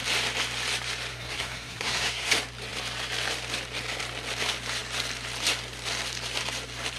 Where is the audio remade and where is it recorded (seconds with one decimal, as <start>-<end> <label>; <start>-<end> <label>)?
0.0-1.1 recorded; 1.1-2.3 remade; 2.3-7.0 recorded